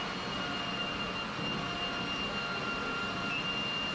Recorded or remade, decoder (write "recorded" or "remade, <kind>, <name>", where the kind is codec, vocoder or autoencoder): recorded